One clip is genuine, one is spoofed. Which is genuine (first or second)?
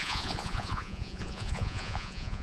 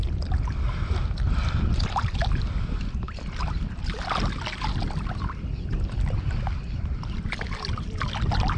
second